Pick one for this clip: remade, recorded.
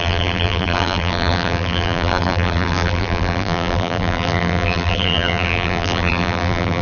remade